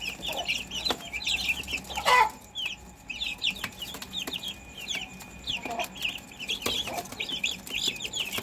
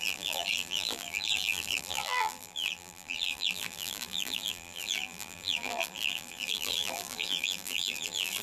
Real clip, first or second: first